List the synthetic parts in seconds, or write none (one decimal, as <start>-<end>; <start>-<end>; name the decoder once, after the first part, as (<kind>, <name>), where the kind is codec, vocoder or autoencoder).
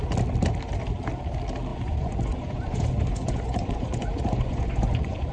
1.7-5.3 (vocoder, Vocos)